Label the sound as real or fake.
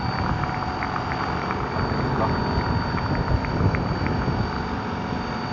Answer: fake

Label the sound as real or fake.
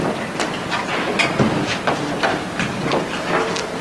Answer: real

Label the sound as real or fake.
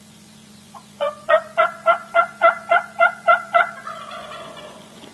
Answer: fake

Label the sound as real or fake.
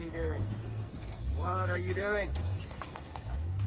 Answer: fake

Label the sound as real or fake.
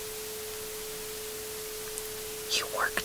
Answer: real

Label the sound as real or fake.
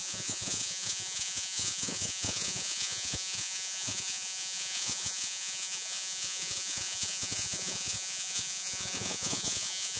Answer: fake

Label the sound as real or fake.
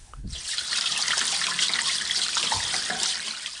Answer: real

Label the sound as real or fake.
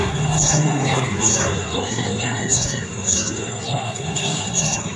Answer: fake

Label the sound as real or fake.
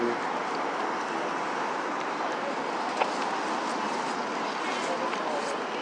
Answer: real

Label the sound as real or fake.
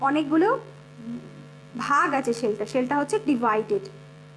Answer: fake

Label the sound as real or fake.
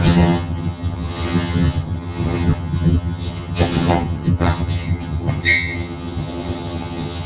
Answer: fake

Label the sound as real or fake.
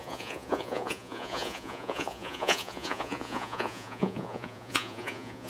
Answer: fake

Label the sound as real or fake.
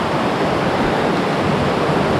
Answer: fake